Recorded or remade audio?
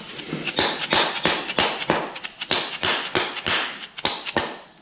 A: recorded